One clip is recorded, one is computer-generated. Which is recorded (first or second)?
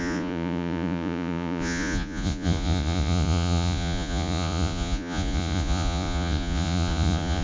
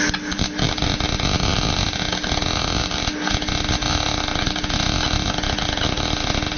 second